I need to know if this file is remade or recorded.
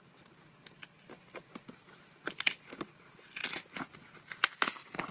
recorded